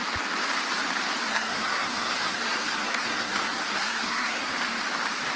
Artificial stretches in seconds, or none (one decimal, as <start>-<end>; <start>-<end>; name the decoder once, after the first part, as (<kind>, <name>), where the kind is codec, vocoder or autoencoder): 1.3-4.5 (codec, SNAC)